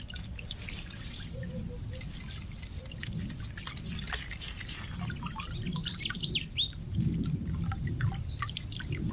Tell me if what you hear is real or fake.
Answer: real